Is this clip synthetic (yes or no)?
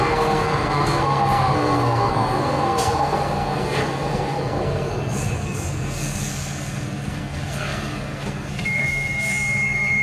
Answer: yes